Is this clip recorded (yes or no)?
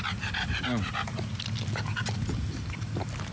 yes